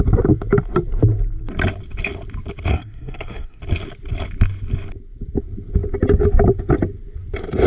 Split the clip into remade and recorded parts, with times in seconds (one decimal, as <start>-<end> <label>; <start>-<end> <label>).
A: 0.0-2.7 recorded; 2.7-3.6 remade; 3.6-7.7 recorded